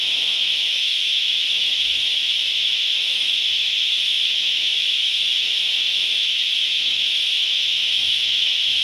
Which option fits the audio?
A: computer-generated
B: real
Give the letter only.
A